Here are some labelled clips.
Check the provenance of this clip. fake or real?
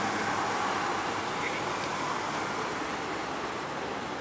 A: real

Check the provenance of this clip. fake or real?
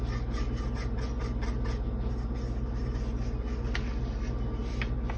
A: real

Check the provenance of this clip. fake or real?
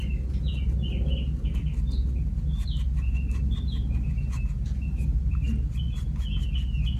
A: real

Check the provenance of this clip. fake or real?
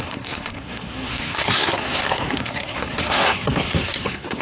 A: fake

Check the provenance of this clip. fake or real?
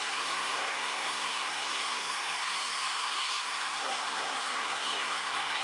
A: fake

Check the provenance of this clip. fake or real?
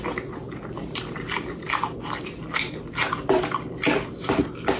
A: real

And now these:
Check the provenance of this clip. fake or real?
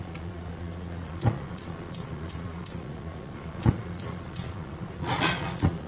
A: fake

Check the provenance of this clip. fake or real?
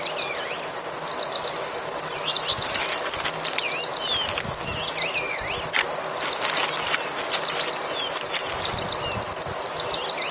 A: real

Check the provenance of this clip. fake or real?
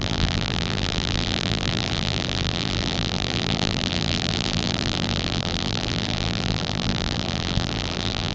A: fake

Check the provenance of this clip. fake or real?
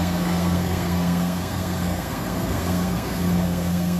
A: fake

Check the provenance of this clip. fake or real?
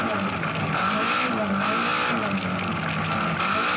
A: real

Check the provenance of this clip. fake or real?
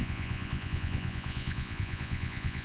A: fake